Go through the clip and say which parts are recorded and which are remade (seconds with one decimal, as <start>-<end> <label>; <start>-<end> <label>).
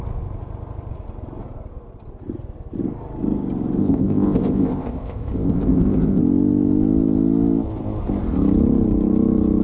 0.0-3.8 recorded; 3.8-6.2 remade; 6.2-9.6 recorded